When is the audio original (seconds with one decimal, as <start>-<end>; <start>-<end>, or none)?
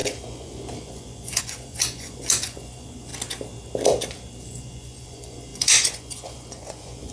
3.1-4.4